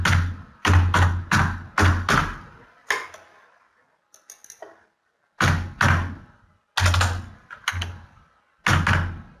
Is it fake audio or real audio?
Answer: real